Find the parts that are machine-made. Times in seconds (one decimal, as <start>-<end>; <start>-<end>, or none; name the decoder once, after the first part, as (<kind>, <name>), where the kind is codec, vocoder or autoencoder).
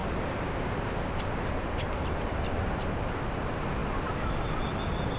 none